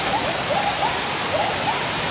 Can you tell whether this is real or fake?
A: fake